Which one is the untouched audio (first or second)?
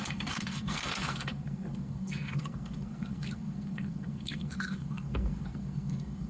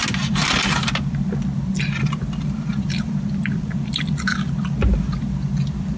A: second